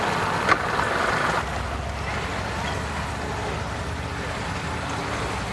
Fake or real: real